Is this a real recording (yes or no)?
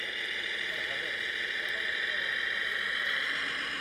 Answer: yes